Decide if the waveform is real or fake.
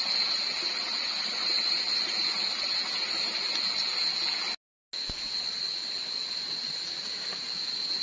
real